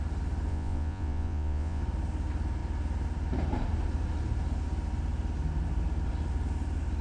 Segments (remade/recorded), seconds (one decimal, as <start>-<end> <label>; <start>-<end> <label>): 0.0-0.5 recorded; 0.5-1.8 remade; 1.8-7.0 recorded